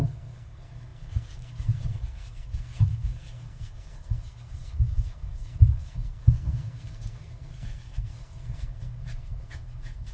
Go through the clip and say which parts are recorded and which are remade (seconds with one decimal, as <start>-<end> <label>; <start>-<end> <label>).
0.0-10.1 remade